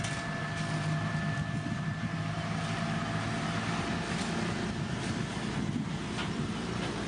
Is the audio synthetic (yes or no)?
no